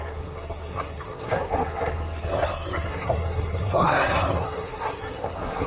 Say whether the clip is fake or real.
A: fake